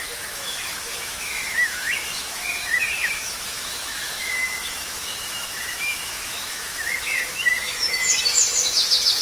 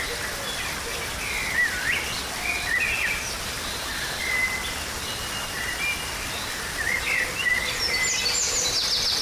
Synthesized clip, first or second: first